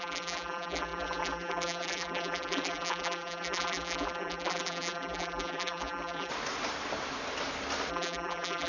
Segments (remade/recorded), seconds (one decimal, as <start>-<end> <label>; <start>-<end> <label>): 0.0-6.3 remade; 6.3-7.9 recorded; 7.9-8.7 remade

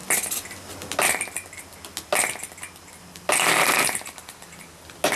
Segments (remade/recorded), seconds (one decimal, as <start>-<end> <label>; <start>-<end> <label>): 0.0-5.2 recorded

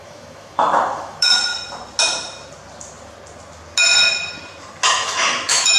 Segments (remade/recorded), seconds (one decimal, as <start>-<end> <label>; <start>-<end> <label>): 0.0-1.5 remade; 1.5-4.9 recorded; 4.9-5.8 remade

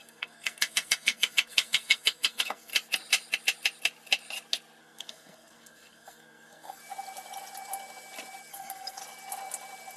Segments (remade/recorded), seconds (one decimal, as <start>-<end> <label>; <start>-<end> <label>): 0.0-2.7 remade; 2.7-4.8 recorded; 4.8-6.8 remade; 6.8-8.5 recorded; 8.5-9.0 remade; 9.0-10.0 recorded

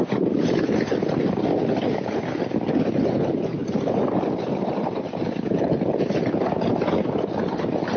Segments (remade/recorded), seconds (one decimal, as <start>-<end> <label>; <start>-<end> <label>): 0.0-8.0 recorded

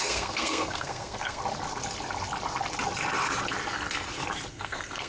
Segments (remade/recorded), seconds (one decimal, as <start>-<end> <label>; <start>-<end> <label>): 0.0-1.4 remade; 1.4-4.5 recorded; 4.5-5.1 remade

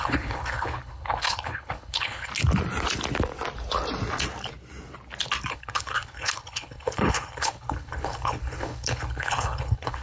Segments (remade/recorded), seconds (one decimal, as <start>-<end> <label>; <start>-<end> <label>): 0.0-2.3 remade; 2.3-5.5 recorded; 5.5-10.0 remade